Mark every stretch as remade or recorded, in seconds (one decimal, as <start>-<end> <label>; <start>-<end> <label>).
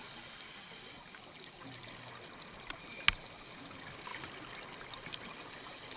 0.0-6.0 recorded